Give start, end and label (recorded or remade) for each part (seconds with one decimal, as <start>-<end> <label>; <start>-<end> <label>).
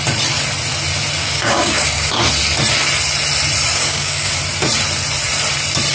0.0-1.2 recorded; 1.2-2.1 remade; 2.1-3.7 recorded; 3.7-4.3 remade; 4.3-5.9 recorded